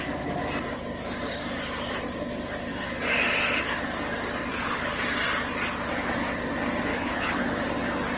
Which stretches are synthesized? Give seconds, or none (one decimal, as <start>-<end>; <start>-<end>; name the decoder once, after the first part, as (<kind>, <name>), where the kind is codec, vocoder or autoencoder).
4.5-5.0 (codec, HILCodec); 6.9-7.6